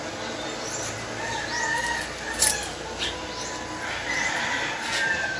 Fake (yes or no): no